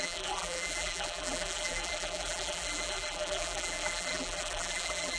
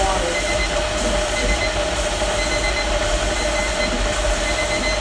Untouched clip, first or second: second